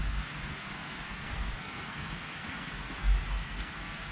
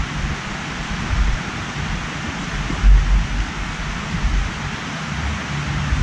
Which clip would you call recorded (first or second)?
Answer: second